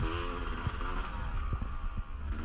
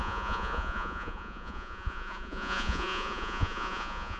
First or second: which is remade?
second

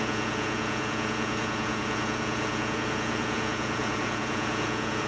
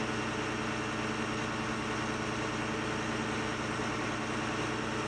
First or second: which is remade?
first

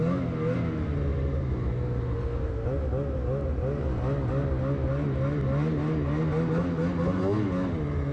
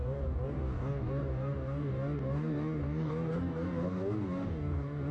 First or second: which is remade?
second